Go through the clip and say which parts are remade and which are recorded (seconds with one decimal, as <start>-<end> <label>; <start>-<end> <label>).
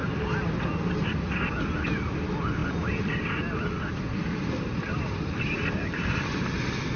0.0-2.6 recorded; 2.6-6.4 remade; 6.4-7.0 recorded